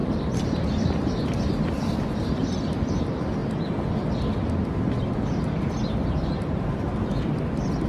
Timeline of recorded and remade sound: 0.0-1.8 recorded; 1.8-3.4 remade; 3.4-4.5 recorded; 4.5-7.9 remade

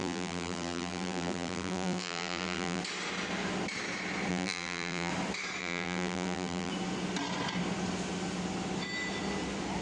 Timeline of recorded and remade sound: 0.0-2.8 remade; 2.8-4.3 recorded; 4.3-5.1 remade; 5.1-5.6 recorded; 5.6-6.7 remade; 6.7-9.8 recorded

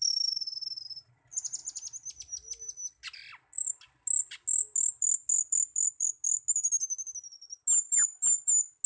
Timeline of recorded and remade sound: 0.0-7.9 recorded; 7.9-8.5 remade; 8.5-8.9 recorded

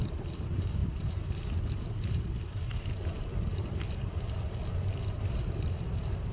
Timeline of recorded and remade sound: 0.0-6.3 remade

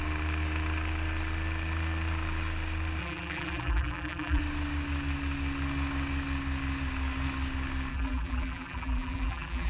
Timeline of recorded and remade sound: 0.0-3.0 recorded; 3.0-4.4 remade; 4.4-7.9 recorded; 7.9-9.7 remade

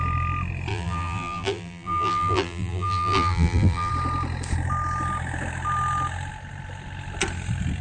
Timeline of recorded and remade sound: 0.0-0.7 recorded; 0.7-3.9 remade; 3.9-7.8 recorded

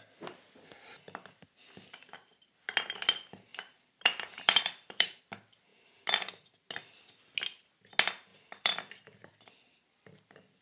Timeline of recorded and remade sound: 0.0-3.5 recorded; 3.5-5.2 remade; 5.2-5.7 recorded; 5.7-6.3 remade; 6.3-8.3 recorded; 8.3-9.3 remade; 9.3-10.6 recorded

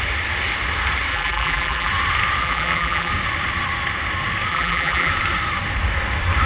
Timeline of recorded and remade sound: 0.0-1.1 recorded; 1.1-1.9 remade; 1.9-2.4 recorded; 2.4-3.1 remade; 3.1-4.5 recorded; 4.5-5.1 remade; 5.1-6.5 recorded